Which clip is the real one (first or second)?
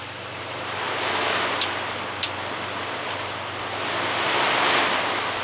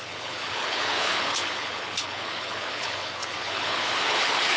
first